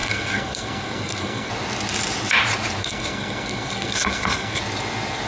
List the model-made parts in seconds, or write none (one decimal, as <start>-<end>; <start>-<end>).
0.0-1.5; 2.8-4.6